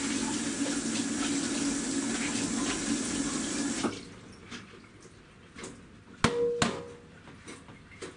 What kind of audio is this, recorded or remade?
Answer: recorded